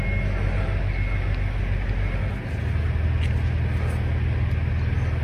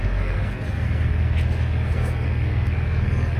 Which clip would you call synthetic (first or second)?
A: second